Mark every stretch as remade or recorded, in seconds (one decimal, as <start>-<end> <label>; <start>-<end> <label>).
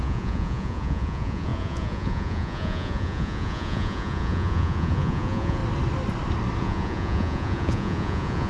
0.0-5.6 remade; 5.6-6.6 recorded; 6.6-8.5 remade